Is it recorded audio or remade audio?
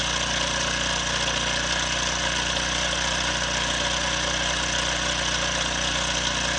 recorded